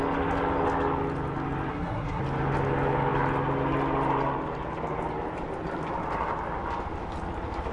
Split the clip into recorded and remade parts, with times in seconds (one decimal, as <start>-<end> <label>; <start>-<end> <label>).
0.0-1.7 recorded; 1.7-2.2 remade; 2.2-7.7 recorded